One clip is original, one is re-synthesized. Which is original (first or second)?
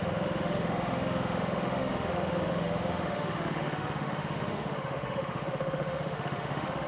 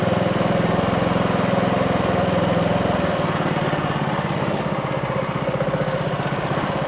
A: second